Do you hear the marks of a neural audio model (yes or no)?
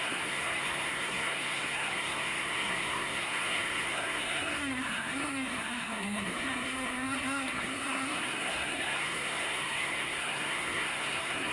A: yes